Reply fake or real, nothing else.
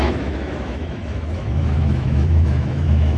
fake